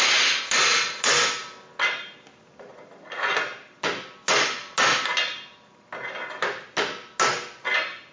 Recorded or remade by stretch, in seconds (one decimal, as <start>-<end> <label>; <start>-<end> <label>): 0.0-8.1 recorded